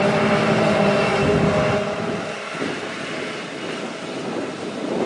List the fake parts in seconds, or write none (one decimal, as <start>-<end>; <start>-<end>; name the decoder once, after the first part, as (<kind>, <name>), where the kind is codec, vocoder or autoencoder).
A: 4.2-5.1 (vocoder, BigVGAN v2)